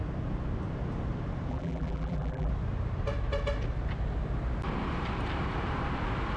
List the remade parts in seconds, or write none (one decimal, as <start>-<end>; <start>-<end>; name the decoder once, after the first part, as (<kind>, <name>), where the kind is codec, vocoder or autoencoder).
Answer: 1.5-2.5 (vocoder, BigVGAN v2)